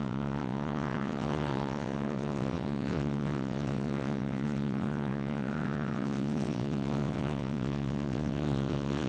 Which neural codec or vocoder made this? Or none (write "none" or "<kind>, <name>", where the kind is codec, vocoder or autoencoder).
vocoder, WaveNeXt